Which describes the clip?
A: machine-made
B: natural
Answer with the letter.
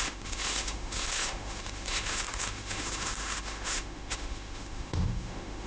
A